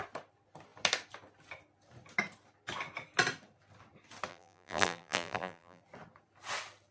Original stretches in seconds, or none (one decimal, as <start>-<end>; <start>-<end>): 0.0-4.3; 5.8-6.9